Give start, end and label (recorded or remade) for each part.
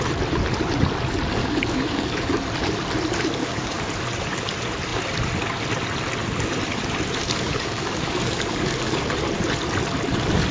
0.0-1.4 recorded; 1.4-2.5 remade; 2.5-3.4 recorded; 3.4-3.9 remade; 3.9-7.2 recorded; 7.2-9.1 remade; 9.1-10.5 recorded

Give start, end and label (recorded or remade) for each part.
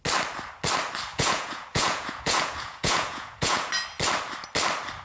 0.0-1.1 recorded; 1.1-3.7 remade; 3.7-5.0 recorded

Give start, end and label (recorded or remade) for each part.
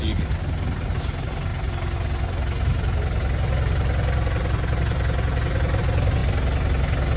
0.0-7.2 recorded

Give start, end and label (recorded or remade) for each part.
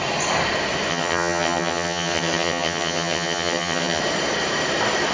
0.0-0.9 recorded; 0.9-4.0 remade; 4.0-5.1 recorded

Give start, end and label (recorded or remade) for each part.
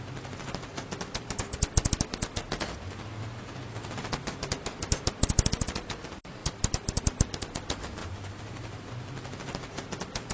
0.0-6.4 recorded; 6.4-7.0 remade; 7.0-8.0 recorded; 8.0-8.9 remade; 8.9-10.3 recorded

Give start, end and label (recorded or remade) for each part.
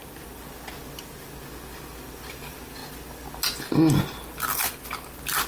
0.0-5.5 recorded